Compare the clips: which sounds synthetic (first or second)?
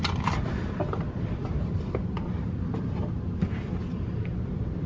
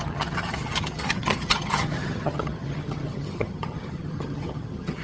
second